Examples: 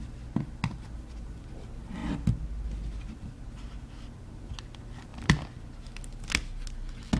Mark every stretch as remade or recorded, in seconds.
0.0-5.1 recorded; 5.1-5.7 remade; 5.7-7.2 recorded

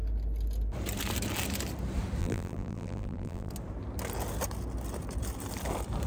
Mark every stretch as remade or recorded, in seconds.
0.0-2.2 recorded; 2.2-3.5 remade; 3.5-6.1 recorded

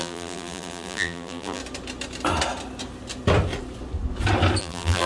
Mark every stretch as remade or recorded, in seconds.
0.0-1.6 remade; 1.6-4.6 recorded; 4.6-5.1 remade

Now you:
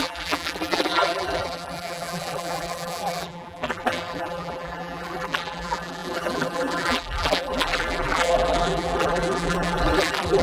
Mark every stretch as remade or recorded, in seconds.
0.0-10.4 remade